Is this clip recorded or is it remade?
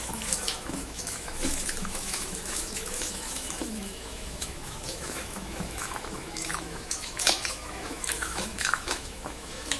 remade